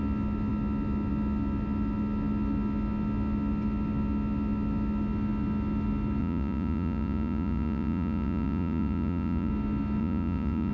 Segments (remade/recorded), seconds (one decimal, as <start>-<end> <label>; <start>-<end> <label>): 0.0-6.2 recorded; 6.2-9.5 remade; 9.5-10.0 recorded; 10.0-10.7 remade

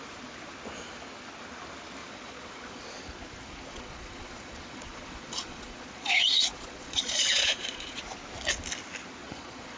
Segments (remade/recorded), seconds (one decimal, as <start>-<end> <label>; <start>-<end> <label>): 0.0-2.0 recorded; 2.0-2.8 remade; 2.8-3.7 recorded; 3.7-8.0 remade; 8.0-9.2 recorded; 9.2-9.8 remade